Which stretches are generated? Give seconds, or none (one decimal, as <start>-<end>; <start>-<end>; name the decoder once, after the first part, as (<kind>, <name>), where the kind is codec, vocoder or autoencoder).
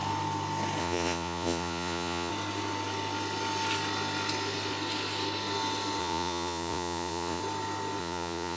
0.8-2.3 (vocoder, Vocos); 6.0-7.4; 8.0-8.6